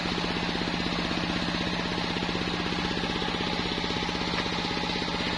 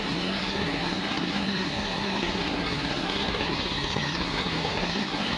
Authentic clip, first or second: first